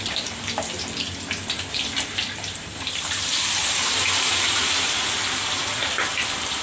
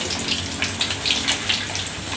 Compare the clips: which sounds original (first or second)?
second